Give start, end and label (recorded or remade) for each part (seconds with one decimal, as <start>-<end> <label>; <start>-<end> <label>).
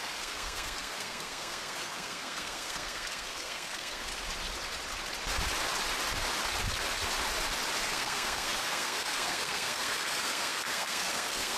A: 0.0-4.1 remade; 4.1-7.8 recorded; 7.8-11.6 remade